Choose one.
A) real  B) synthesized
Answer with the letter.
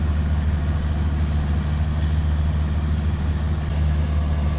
A